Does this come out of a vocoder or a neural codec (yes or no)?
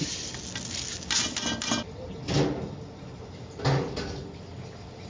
no